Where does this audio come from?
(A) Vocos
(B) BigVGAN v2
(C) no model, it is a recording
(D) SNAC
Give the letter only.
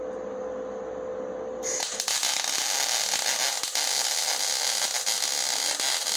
C